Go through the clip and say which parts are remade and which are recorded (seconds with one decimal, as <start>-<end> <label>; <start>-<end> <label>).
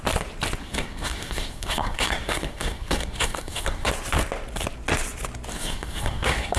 0.0-0.6 recorded; 0.6-3.9 remade; 3.9-5.5 recorded; 5.5-6.6 remade